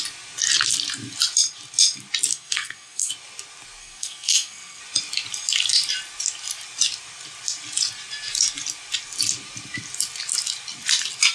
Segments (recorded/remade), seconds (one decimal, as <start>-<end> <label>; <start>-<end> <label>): 0.0-2.3 recorded; 2.3-3.1 remade; 3.1-3.8 recorded; 3.8-4.8 remade; 4.8-11.3 recorded